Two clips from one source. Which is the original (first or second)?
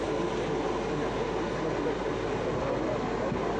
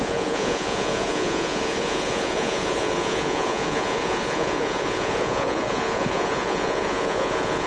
first